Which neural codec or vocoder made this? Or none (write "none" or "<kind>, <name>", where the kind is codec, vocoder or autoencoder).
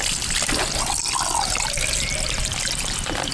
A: none